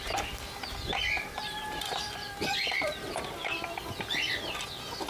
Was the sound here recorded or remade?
remade